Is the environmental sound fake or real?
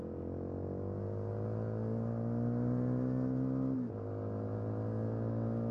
real